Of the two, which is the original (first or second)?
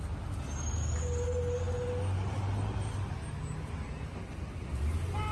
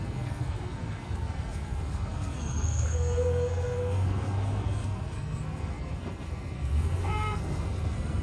first